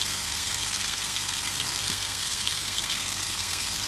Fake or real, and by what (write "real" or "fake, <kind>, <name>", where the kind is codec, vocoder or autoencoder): fake, codec, SNAC